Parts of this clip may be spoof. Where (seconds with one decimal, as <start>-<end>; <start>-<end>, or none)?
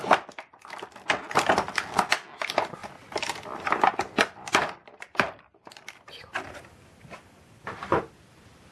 2.8-8.0